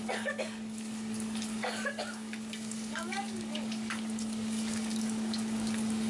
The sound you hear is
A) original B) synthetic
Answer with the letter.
B